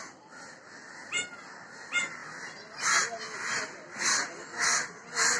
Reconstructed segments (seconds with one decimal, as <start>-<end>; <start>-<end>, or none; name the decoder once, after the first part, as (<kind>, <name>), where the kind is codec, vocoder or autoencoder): none